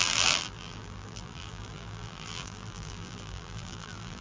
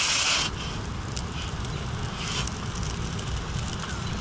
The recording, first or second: second